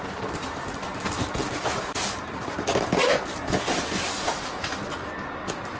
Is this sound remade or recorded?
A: recorded